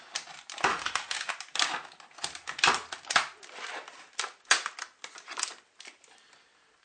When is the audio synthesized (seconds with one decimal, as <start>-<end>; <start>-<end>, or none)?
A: 0.7-1.3